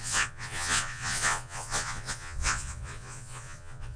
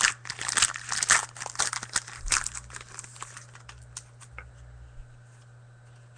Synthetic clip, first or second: first